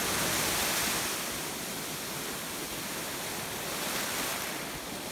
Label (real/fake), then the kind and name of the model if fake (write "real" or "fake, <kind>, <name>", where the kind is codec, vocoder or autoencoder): real